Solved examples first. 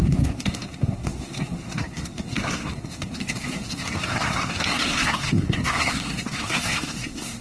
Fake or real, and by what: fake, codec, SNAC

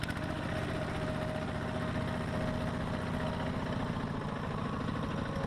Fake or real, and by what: real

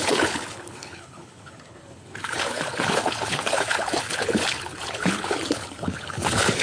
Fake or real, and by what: fake, codec, HILCodec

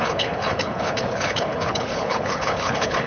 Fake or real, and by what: fake, codec, HILCodec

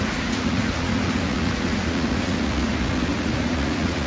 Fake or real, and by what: fake, vocoder, Vocos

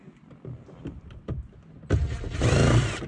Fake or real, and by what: real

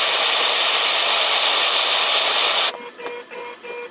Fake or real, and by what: real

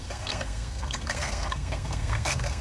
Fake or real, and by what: fake, codec, SNAC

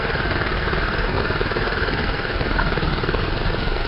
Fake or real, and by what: fake, codec, SNAC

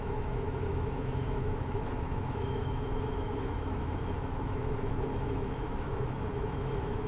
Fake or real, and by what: fake, autoencoder, DAC-VAE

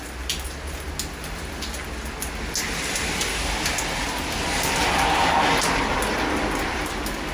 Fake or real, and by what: real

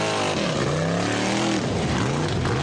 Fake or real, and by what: real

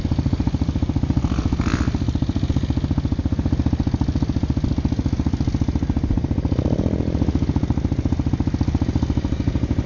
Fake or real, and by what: real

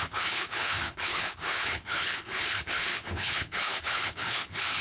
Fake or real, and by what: fake, codec, HILCodec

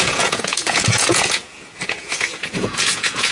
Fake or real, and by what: fake, vocoder, Vocos